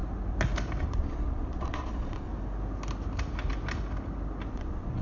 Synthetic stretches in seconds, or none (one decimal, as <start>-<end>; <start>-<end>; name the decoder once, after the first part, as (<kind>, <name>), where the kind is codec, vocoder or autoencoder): 0.8-2.3 (vocoder, Vocos); 4.5-5.0